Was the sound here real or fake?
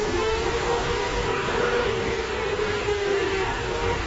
fake